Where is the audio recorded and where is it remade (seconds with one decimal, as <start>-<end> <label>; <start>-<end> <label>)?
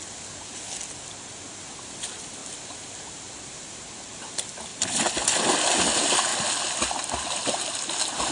0.0-8.3 recorded